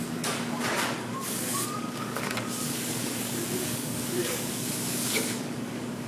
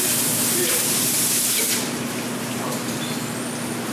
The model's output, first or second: first